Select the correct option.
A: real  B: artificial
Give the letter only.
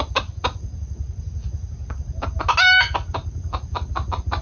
A